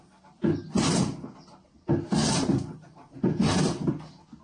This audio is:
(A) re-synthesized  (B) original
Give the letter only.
B